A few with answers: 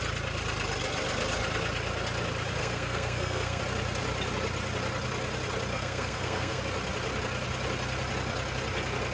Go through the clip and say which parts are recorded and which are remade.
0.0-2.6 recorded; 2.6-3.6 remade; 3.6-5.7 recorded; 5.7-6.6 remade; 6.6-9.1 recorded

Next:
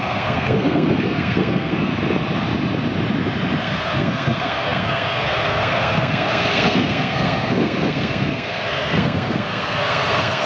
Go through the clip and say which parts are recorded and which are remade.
0.0-1.9 remade; 1.9-3.6 recorded; 3.6-10.5 remade

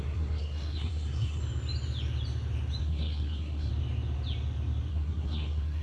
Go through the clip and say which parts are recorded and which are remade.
0.0-1.4 remade; 1.4-2.8 recorded; 2.8-3.7 remade; 3.7-4.9 recorded; 4.9-5.8 remade

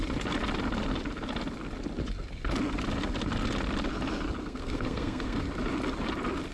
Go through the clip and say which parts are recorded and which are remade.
0.0-4.4 recorded; 4.4-5.4 remade; 5.4-6.5 recorded

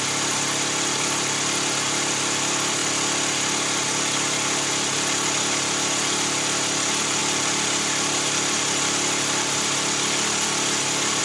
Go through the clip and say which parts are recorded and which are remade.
0.0-11.2 recorded

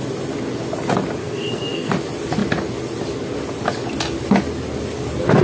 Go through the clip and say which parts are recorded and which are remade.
0.0-1.2 recorded; 1.2-1.9 remade; 1.9-5.4 recorded

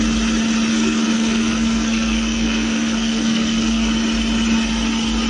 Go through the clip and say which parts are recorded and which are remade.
0.0-0.7 recorded; 0.7-3.9 remade; 3.9-5.3 recorded

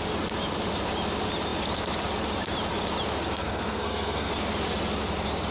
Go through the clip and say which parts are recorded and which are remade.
0.0-3.4 recorded; 3.4-4.3 remade; 4.3-5.5 recorded